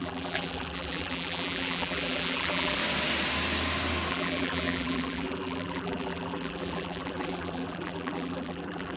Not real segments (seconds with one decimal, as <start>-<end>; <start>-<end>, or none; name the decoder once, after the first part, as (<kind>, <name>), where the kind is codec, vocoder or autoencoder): 0.0-2.8 (vocoder, BigVGAN v2); 4.1-9.0